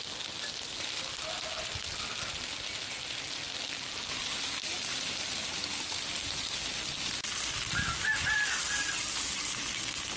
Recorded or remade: recorded